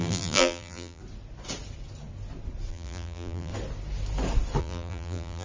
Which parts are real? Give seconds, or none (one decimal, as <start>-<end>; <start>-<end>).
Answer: 1.0-2.7; 3.5-4.6